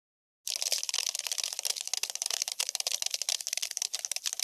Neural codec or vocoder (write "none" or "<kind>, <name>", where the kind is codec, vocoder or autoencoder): none